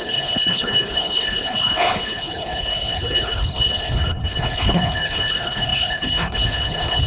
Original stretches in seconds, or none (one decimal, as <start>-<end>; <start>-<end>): none